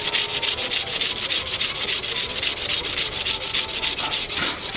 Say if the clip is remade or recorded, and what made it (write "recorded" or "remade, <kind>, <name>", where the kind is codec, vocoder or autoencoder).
recorded